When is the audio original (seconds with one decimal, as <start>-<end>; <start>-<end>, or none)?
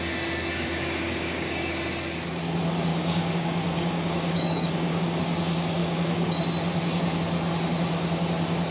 0.0-0.5; 1.7-2.9; 5.2-5.8; 6.4-8.7